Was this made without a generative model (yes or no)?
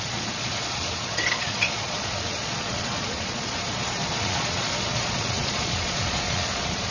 no